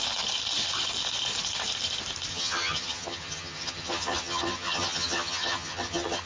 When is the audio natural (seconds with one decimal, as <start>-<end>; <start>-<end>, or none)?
0.0-2.3